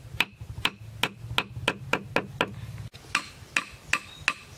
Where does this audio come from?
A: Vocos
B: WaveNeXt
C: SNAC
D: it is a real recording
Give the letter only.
D